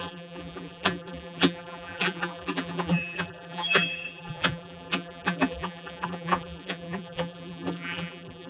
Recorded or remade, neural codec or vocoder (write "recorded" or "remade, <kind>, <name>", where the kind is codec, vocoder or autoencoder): remade, vocoder, BigVGAN v2